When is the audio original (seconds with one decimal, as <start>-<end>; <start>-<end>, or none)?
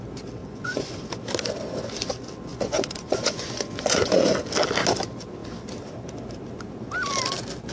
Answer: 0.0-0.4; 1.1-2.5; 4.3-7.7